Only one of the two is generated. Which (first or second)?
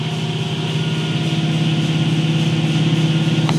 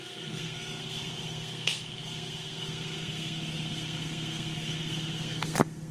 second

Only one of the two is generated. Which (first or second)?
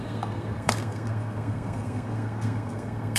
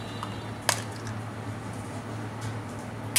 first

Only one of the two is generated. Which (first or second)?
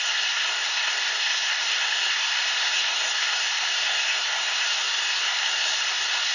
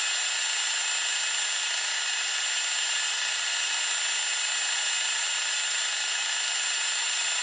first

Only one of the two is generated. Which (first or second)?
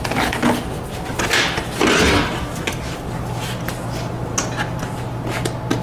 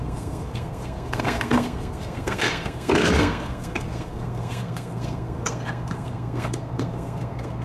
second